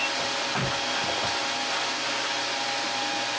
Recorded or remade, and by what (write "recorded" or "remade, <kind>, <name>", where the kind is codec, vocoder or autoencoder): recorded